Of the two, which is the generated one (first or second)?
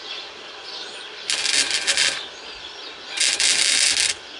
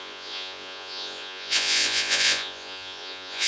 second